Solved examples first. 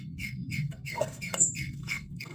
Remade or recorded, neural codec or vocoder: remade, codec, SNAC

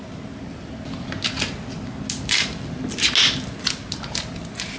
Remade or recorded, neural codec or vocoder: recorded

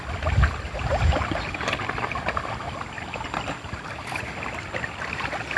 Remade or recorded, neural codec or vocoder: recorded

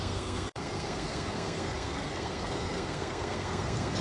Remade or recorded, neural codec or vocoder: remade, codec, SNAC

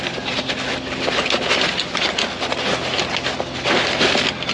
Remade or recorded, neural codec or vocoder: recorded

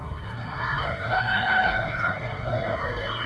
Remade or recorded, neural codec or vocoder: remade, codec, SNAC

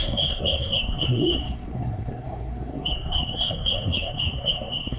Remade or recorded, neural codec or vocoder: remade, codec, SNAC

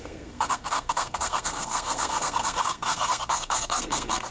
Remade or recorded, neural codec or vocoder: remade, codec, SNAC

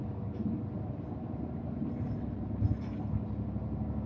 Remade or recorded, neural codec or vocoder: recorded